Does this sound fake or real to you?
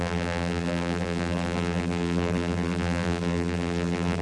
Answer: fake